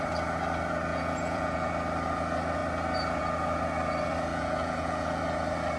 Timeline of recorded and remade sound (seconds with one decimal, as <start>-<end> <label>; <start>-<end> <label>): 0.0-0.9 recorded; 0.9-1.7 remade; 1.7-4.3 recorded; 4.3-5.2 remade; 5.2-5.8 recorded